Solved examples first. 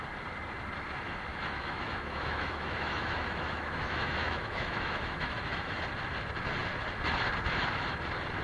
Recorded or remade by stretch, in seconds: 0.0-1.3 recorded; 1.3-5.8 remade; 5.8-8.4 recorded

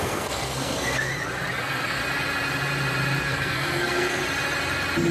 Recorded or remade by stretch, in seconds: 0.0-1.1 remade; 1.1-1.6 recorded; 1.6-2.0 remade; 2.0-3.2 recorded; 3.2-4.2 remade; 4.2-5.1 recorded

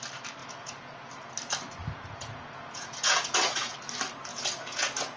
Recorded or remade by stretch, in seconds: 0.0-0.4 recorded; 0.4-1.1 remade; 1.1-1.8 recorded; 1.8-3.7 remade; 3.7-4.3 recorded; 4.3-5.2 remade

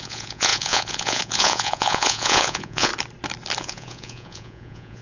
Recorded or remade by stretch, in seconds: 0.0-2.9 remade; 2.9-3.6 recorded; 3.6-5.0 remade

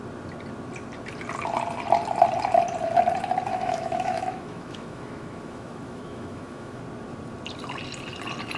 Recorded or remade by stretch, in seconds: 0.0-3.5 recorded; 3.5-6.8 remade; 6.8-8.6 recorded

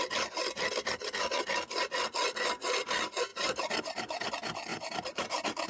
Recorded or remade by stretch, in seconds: 0.0-3.3 recorded; 3.3-4.3 remade; 4.3-4.7 recorded; 4.7-5.7 remade

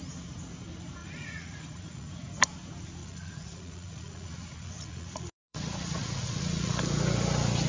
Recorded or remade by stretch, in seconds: 0.0-1.0 recorded; 1.0-2.1 remade; 2.1-3.0 recorded; 3.0-6.8 remade; 6.8-7.7 recorded

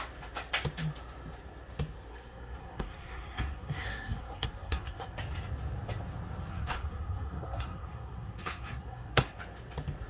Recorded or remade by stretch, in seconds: 0.0-2.1 recorded; 2.1-5.2 remade; 5.2-6.5 recorded; 6.5-9.4 remade; 9.4-10.1 recorded